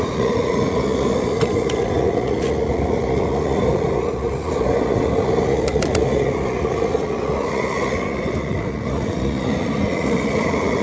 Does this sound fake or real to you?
fake